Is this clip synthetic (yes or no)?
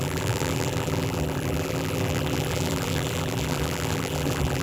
yes